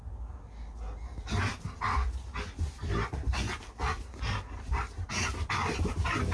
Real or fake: real